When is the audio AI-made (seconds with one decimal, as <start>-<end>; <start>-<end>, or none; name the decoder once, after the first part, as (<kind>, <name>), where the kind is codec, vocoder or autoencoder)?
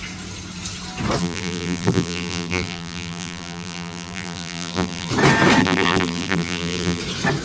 1.2-5.1 (vocoder, BigVGAN v2); 5.6-7.0